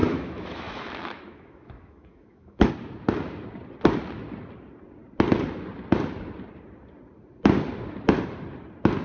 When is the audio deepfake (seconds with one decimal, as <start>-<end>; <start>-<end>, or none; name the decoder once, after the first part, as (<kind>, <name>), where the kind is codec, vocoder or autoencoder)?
0.0-2.7 (autoencoder, DAC-VAE)